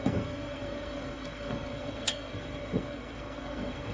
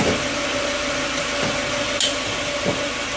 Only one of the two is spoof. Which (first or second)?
first